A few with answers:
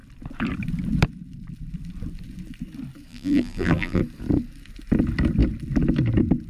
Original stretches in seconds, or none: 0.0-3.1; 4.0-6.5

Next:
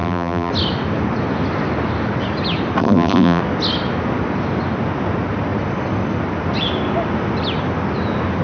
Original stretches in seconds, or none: 0.5-2.8; 3.4-8.4

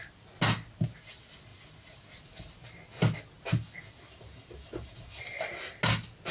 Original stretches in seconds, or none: 0.0-6.3

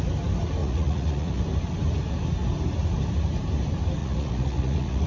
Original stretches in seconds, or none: 0.0-0.6; 1.4-4.0